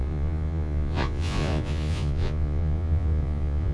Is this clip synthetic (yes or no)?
yes